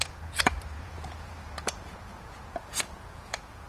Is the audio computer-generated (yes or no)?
yes